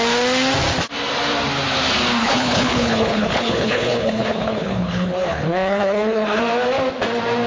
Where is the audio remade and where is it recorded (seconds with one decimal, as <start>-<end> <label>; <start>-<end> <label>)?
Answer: 0.0-2.2 recorded; 2.2-6.4 remade; 6.4-7.5 recorded